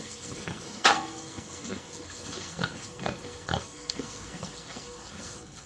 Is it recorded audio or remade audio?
remade